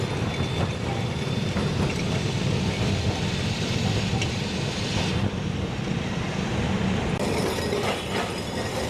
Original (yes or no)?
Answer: yes